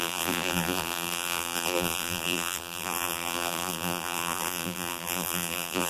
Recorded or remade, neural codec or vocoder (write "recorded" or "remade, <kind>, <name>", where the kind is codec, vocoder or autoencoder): remade, vocoder, BigVGAN v2